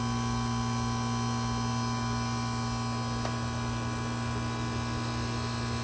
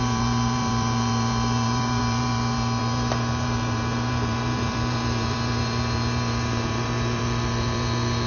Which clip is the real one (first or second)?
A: first